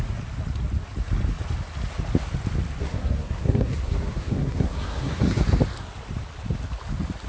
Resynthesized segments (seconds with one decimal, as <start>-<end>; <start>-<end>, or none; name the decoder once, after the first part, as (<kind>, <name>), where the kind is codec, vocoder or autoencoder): 2.8-5.4 (codec, SNAC)